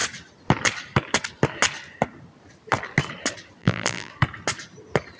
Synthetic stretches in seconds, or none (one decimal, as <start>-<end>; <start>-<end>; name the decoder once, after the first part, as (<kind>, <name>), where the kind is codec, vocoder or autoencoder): 3.6-4.1 (vocoder, BigVGAN v2)